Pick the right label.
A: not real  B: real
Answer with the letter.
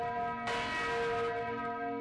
B